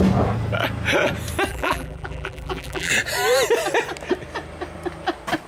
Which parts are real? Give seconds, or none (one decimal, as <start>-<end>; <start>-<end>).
0.0-1.5; 2.9-5.5